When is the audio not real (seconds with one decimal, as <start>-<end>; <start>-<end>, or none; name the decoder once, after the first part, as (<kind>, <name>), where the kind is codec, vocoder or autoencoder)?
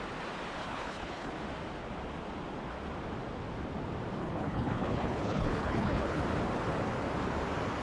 0.6-1.3 (codec, HILCodec); 4.2-6.2